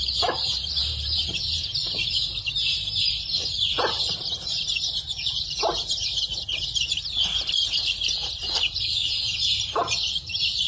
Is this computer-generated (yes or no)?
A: yes